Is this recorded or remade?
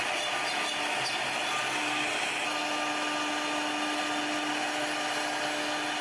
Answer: recorded